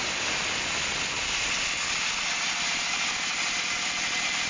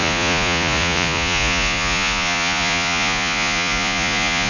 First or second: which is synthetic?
second